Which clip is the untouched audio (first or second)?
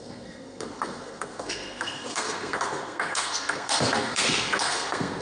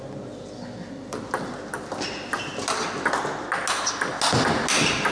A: second